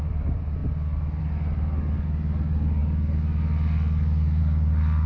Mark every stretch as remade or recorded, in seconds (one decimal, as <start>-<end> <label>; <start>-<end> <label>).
0.0-5.1 recorded